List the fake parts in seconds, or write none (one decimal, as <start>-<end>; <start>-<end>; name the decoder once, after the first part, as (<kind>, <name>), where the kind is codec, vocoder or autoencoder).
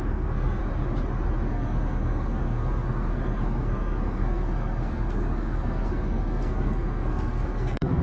0.0-0.6 (codec, SNAC); 1.5-8.0